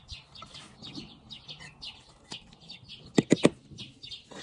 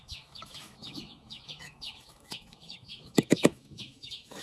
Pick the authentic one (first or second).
first